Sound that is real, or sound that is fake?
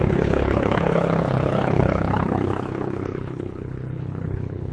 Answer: fake